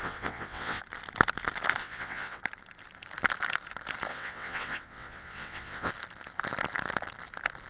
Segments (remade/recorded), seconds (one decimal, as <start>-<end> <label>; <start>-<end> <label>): 0.0-0.8 remade; 0.8-1.8 recorded; 1.8-2.4 remade; 2.4-4.1 recorded; 4.1-5.9 remade; 5.9-7.7 recorded